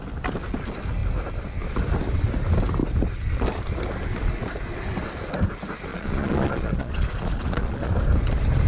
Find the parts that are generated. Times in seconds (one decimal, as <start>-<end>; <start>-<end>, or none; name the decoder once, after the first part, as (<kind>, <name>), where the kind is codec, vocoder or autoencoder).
5.9-7.9 (vocoder, Vocos)